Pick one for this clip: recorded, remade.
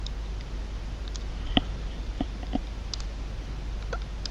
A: recorded